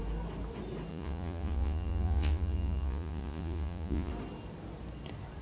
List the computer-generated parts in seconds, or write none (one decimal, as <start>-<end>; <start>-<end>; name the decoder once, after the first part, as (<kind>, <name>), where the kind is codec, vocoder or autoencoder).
0.9-4.1 (vocoder, Vocos)